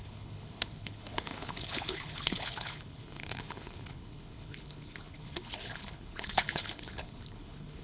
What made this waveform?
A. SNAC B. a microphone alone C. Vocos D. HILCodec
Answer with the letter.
D